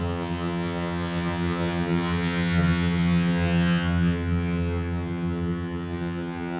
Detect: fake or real fake